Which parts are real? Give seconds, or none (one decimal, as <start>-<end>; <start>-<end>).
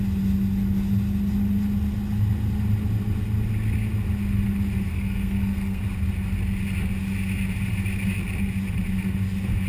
0.0-4.9; 5.8-9.7